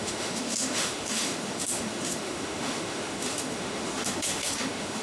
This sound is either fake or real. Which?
fake